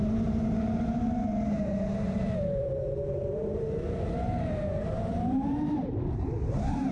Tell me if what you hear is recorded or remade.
remade